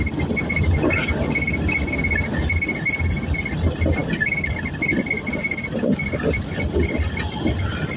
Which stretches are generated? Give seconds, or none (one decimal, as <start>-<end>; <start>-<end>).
none